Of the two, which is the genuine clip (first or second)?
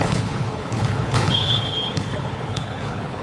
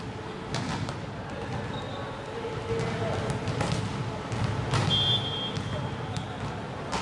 second